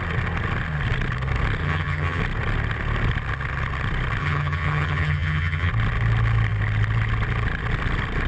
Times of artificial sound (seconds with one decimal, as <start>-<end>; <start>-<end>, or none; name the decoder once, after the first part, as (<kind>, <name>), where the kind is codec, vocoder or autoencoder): 1.6-2.2 (vocoder, HiFi-GAN); 4.2-5.7

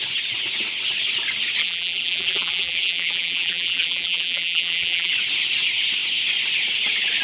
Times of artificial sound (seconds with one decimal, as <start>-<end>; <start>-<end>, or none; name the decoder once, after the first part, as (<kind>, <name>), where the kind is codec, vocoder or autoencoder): 1.6-5.1 (vocoder, BigVGAN v2)